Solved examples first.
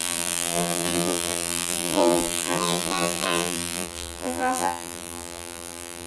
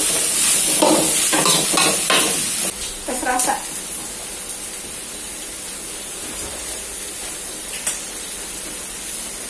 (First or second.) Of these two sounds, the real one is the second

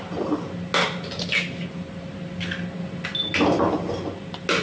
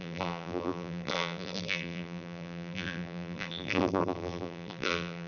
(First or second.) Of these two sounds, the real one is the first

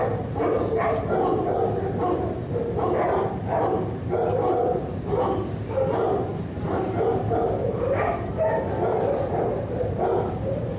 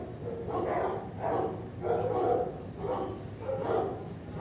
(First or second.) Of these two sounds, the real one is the second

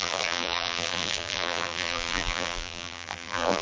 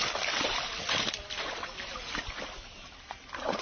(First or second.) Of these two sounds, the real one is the second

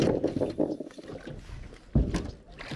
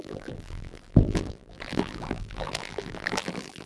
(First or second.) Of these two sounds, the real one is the first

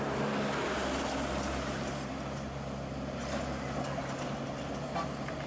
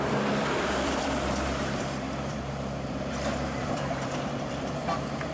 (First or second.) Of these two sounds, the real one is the first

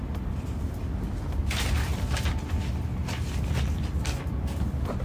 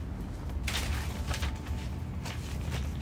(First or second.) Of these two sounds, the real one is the second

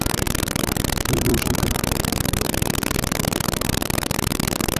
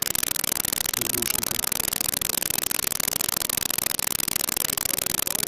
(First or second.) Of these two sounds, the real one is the second